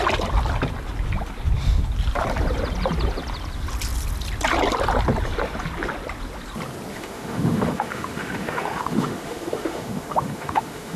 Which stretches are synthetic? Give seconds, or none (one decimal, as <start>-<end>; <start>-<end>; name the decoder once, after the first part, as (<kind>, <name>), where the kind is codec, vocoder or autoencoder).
6.9-11.0 (autoencoder, DAC-VAE)